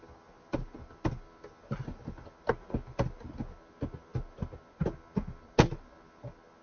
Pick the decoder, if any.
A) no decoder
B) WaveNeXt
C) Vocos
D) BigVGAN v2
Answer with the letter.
A